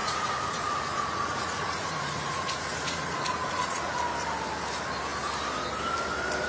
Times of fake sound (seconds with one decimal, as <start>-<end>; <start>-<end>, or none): 0.0-3.9